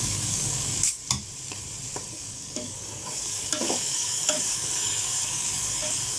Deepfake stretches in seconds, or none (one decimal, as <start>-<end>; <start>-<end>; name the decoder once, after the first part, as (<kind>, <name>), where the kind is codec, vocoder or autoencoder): 0.0-1.0 (codec, DAC); 2.1-6.2